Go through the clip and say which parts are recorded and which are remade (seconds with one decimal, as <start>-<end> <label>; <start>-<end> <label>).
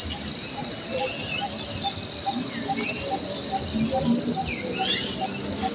0.0-0.4 recorded; 0.4-1.1 remade; 1.1-5.7 recorded